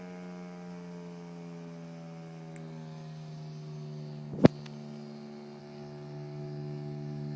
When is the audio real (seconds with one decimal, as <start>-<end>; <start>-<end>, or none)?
0.0-5.6